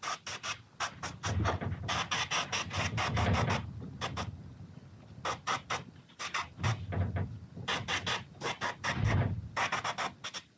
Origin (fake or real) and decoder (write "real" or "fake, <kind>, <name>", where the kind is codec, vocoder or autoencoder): real